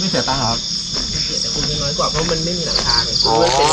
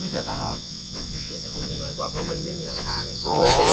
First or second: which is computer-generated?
second